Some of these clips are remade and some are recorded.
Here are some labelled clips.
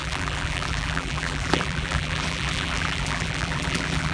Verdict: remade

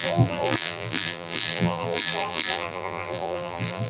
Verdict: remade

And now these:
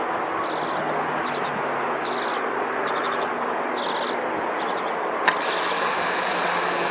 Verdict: recorded